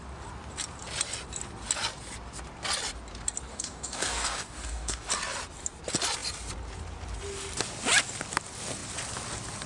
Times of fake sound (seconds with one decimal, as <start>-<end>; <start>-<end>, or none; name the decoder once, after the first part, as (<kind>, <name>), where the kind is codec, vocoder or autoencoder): 3.5-5.1 (codec, DAC)